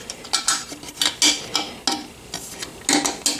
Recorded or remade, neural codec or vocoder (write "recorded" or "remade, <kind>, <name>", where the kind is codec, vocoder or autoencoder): recorded